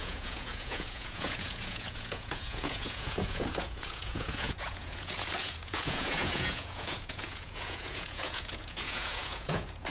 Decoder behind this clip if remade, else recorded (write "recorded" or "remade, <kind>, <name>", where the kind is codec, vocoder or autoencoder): remade, vocoder, Vocos